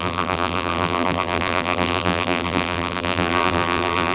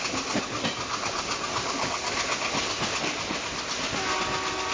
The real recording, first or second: second